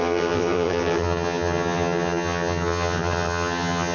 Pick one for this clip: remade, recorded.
remade